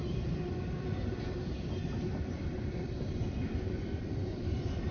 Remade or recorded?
remade